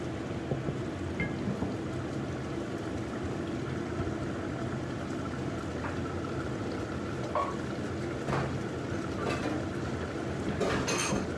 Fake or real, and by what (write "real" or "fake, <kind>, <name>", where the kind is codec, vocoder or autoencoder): real